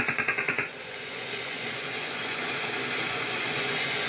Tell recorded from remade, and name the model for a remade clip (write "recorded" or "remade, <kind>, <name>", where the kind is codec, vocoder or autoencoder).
remade, vocoder, Vocos